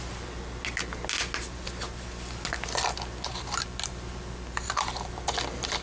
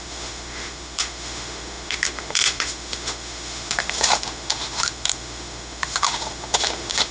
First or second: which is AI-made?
second